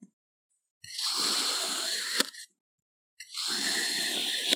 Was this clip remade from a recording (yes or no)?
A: yes